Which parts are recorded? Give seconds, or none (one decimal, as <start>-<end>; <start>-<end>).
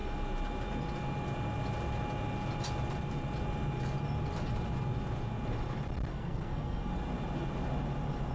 0.0-6.1; 6.9-8.3